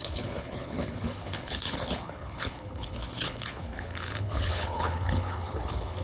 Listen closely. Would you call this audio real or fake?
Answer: fake